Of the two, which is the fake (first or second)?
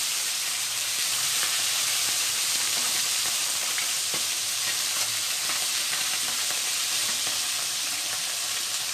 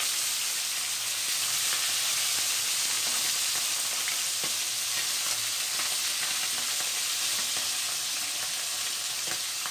first